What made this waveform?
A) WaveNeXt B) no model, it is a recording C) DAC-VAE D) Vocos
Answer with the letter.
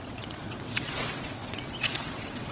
A